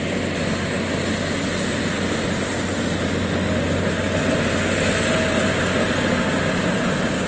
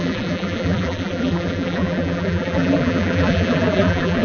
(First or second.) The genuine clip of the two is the first